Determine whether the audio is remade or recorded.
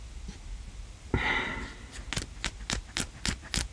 recorded